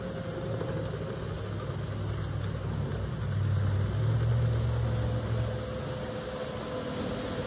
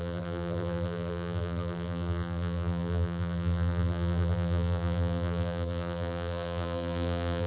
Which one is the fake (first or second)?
second